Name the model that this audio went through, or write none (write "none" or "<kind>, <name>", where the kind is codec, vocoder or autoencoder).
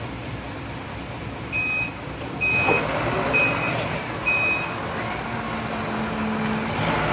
none